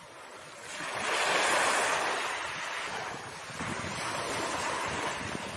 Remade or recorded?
recorded